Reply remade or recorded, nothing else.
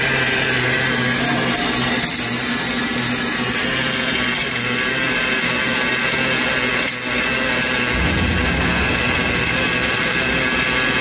recorded